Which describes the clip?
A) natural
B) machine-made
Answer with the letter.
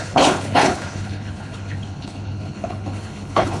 B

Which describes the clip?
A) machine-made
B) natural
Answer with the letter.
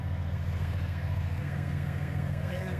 A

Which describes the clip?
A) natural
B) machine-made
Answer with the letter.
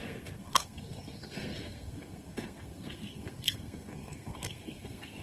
B